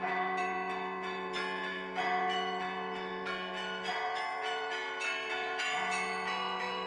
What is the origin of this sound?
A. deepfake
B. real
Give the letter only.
A